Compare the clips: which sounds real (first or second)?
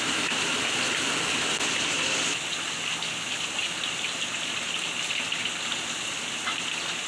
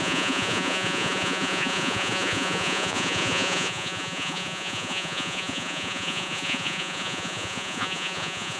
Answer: first